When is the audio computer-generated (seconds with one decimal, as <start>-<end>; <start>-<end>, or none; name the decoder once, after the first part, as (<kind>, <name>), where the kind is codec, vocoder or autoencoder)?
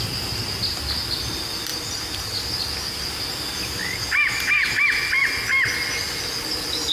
none